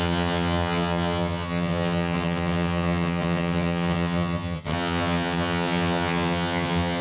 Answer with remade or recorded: remade